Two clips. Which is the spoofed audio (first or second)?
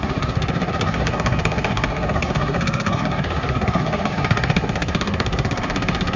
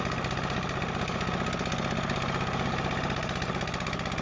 first